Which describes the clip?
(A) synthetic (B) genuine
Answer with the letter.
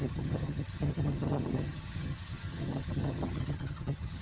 A